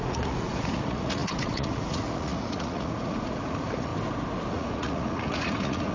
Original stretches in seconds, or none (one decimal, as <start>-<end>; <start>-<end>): 3.9-4.5